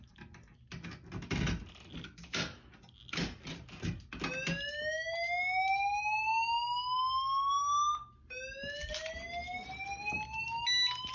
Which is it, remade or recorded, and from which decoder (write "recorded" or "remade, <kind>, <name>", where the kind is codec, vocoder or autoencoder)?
recorded